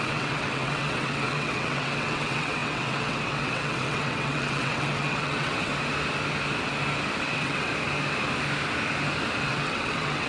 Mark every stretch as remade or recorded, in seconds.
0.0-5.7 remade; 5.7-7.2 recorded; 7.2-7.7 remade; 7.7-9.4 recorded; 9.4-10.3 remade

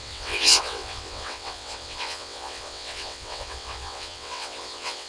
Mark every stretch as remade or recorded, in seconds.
0.0-5.1 remade

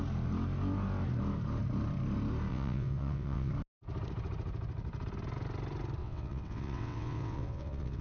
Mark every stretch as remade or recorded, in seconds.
0.0-2.5 recorded; 2.5-3.5 remade; 3.5-6.0 recorded; 6.0-8.0 remade

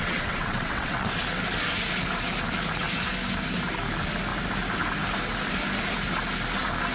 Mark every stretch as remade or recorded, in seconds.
0.0-1.1 remade; 1.1-6.9 recorded

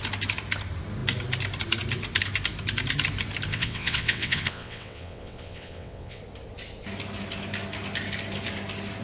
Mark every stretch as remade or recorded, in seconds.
0.0-3.5 recorded; 3.5-6.2 remade; 6.2-9.0 recorded

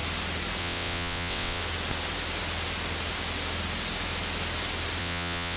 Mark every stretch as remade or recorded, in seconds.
0.0-0.6 recorded; 0.6-1.6 remade; 1.6-5.0 recorded; 5.0-5.6 remade